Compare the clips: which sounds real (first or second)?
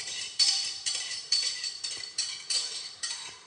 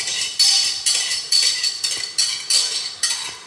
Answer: second